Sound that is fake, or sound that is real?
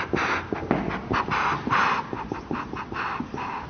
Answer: real